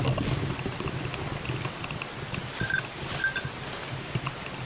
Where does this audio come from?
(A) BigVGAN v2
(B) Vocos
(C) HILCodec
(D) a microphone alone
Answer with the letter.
D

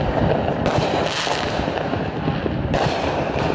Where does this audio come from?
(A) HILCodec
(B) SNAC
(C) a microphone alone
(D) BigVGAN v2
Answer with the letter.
C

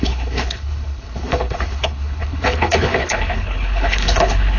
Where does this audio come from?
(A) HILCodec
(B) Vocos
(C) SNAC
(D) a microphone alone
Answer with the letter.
A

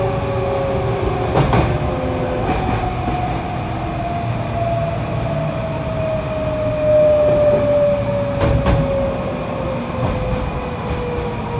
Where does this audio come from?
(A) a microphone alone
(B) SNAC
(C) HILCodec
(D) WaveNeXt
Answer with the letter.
A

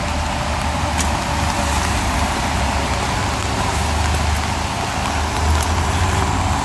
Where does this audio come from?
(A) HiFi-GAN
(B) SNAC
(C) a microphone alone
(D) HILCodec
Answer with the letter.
C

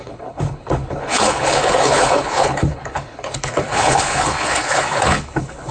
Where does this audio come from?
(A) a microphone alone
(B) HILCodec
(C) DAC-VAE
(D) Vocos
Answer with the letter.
B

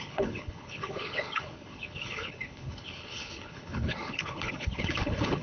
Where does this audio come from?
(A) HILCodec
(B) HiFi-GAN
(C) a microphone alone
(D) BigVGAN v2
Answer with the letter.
A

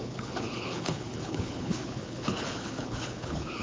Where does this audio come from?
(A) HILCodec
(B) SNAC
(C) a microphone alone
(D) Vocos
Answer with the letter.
A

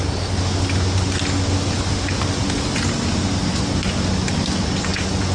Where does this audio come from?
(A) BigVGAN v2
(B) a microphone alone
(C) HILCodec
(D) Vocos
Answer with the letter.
B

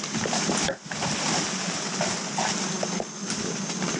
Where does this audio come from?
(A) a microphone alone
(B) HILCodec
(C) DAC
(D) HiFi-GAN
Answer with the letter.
A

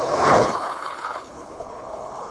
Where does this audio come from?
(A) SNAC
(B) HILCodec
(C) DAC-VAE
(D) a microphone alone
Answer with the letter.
B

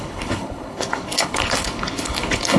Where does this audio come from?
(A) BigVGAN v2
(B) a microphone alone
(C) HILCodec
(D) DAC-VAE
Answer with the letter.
C